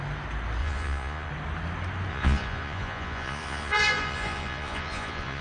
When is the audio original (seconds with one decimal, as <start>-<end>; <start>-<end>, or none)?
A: 0.0-0.6; 1.3-2.1